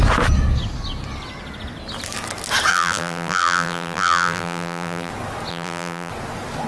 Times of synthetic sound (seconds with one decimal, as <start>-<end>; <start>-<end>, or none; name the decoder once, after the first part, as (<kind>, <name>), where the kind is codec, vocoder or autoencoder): 2.7-5.1 (vocoder, BigVGAN v2); 5.5-6.1